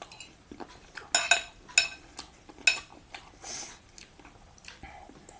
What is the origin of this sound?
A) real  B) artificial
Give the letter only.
A